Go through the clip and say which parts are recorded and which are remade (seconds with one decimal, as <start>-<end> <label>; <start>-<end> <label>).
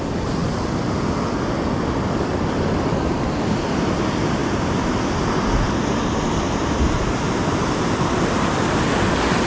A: 0.0-9.5 recorded